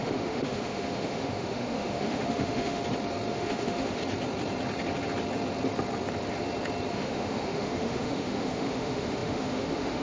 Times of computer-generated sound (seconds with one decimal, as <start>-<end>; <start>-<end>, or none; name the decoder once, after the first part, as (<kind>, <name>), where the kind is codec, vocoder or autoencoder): 0.0-2.8 (autoencoder, DAC-VAE); 3.3-4.0; 6.9-10.0